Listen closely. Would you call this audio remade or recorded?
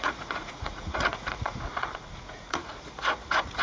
remade